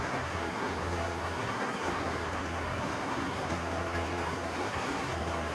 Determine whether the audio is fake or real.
fake